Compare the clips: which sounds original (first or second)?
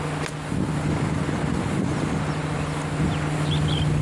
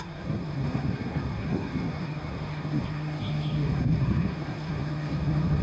first